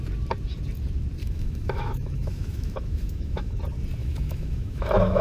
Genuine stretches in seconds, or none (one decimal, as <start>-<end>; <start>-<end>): 0.0-1.2; 3.6-4.0

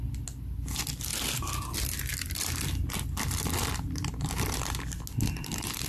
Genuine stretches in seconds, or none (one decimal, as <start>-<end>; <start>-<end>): 0.0-5.9